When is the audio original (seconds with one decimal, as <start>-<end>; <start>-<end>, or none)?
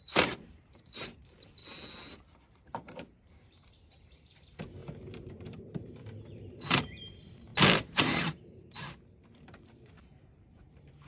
1.6-2.5